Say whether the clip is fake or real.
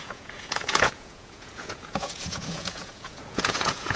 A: fake